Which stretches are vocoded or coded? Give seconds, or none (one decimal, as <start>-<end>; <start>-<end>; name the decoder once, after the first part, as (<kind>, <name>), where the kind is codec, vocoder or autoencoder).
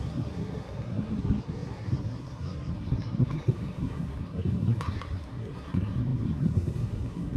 0.0-7.4 (codec, SNAC)